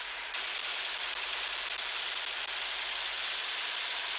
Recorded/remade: recorded